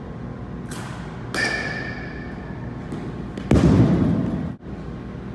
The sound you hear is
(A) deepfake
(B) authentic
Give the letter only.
B